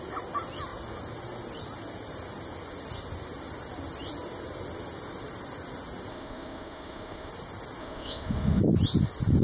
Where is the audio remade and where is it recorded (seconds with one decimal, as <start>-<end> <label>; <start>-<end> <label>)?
0.0-6.1 recorded; 6.1-7.3 remade; 7.3-7.8 recorded; 7.8-8.6 remade; 8.6-9.4 recorded